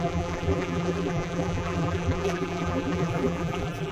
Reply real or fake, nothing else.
fake